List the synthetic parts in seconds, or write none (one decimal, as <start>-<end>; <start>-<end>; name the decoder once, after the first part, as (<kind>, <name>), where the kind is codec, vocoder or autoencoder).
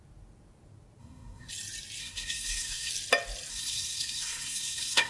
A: 1.0-1.5 (codec, SNAC); 2.0-2.9; 3.5-5.1